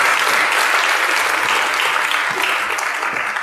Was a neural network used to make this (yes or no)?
no